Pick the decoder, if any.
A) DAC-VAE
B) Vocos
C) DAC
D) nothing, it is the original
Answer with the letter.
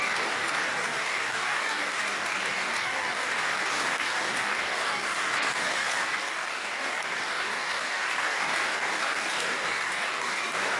C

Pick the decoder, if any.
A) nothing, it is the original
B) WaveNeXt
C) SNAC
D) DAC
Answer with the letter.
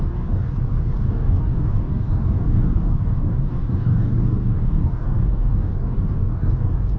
D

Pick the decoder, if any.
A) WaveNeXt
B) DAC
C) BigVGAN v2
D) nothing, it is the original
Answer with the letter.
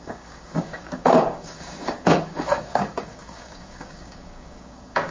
B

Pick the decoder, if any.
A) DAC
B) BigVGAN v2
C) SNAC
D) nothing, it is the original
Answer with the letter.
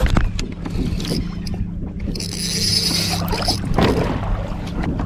D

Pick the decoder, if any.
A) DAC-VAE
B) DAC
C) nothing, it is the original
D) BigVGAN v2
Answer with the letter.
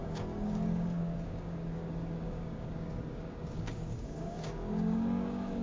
B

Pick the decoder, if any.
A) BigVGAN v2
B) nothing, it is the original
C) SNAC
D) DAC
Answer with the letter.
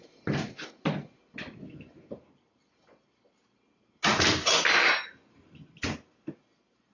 B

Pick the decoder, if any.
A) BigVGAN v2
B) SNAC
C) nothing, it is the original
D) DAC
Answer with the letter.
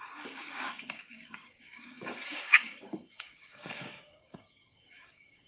D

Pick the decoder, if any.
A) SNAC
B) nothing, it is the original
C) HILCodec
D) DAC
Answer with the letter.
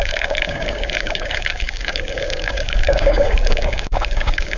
D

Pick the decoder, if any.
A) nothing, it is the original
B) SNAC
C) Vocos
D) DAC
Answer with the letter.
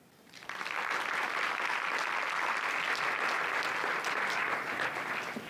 A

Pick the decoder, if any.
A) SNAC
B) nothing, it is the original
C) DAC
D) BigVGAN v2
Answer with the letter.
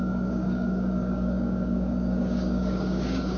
C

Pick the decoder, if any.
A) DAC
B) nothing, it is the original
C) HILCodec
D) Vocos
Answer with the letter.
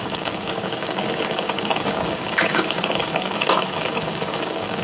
A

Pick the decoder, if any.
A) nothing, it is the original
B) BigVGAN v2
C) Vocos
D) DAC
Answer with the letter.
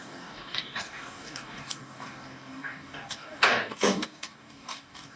D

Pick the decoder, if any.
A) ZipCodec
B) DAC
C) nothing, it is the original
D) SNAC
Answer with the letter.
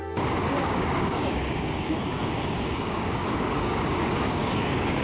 B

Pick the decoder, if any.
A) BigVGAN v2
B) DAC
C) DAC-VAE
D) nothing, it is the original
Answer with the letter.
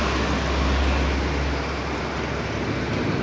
D